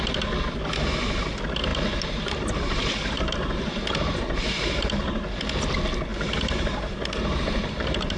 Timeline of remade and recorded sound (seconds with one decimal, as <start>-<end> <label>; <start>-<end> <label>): 0.0-1.7 recorded; 1.7-5.4 remade; 5.4-6.1 recorded; 6.1-8.2 remade